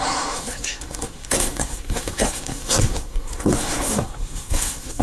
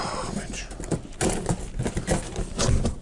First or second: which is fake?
first